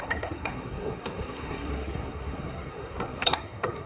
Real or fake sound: fake